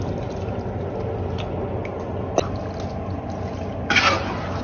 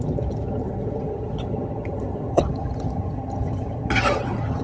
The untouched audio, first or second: first